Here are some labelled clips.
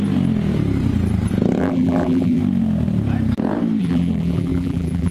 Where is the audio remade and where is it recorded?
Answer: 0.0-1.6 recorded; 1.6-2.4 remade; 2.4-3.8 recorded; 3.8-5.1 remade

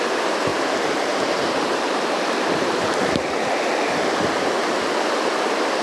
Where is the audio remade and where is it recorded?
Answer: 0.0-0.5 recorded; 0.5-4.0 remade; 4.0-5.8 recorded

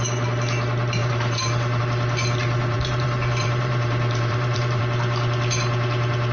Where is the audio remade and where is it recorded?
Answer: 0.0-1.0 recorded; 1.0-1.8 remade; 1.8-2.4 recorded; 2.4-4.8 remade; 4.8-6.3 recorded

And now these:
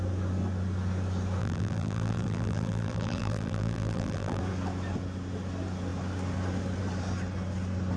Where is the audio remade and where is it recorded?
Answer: 0.0-1.4 recorded; 1.4-4.4 remade; 4.4-8.0 recorded

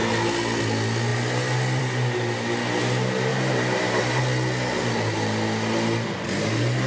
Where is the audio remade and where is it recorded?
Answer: 0.0-3.3 recorded; 3.3-4.2 remade; 4.2-6.9 recorded

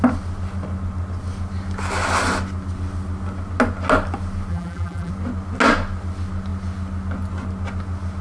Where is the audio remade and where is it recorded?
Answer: 0.0-4.5 recorded; 4.5-5.1 remade; 5.1-8.2 recorded